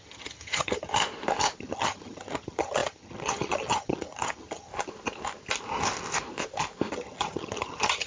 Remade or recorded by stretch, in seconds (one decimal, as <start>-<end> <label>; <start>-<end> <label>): 0.0-0.9 remade; 0.9-1.6 recorded; 1.6-4.7 remade; 4.7-6.9 recorded; 6.9-8.1 remade